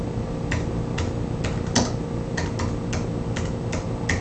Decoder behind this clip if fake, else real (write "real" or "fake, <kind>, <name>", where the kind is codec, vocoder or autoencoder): real